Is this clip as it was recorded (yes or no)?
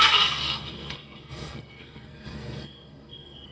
no